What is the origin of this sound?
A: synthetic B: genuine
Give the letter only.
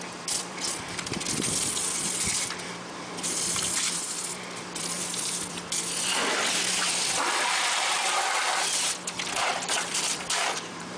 A